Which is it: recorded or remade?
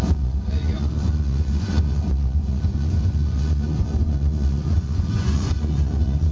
remade